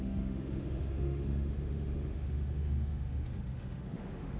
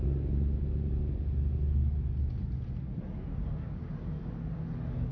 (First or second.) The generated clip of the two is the first